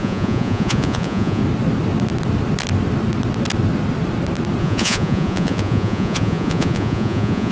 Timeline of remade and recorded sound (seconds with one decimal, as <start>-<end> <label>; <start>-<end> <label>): 0.0-1.4 remade; 1.4-4.6 recorded; 4.6-7.5 remade